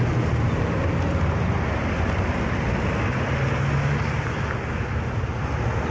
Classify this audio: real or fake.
real